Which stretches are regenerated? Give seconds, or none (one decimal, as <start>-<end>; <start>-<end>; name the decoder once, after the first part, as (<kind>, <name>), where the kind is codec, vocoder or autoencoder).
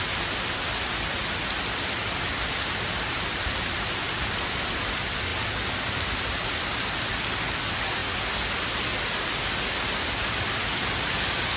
none